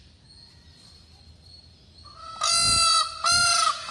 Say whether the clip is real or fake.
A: real